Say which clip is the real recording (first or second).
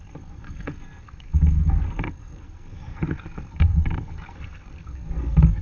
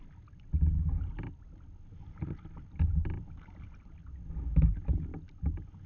second